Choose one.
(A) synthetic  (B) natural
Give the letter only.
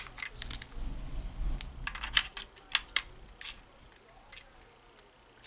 B